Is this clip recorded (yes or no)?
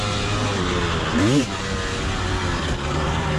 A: yes